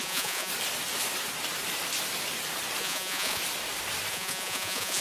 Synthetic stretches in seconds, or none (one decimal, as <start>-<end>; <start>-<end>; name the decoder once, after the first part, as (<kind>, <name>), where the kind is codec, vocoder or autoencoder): 0.0-0.5 (vocoder, Vocos); 2.8-3.4; 4.1-5.0